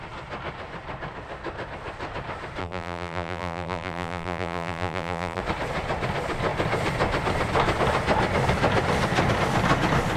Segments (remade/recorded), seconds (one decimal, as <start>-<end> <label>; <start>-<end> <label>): 0.0-2.6 recorded; 2.6-5.4 remade; 5.4-10.2 recorded

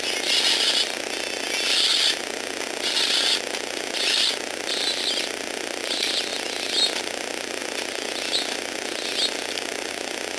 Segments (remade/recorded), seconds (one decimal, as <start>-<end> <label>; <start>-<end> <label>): 0.0-10.4 recorded

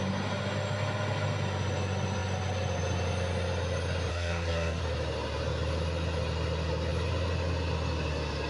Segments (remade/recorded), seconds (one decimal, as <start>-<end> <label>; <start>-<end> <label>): 0.0-4.1 recorded; 4.1-4.8 remade; 4.8-8.5 recorded

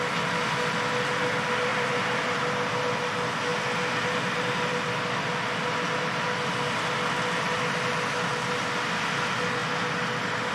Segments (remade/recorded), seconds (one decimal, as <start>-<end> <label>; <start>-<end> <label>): 0.0-1.7 recorded; 1.7-2.4 remade; 2.4-10.5 recorded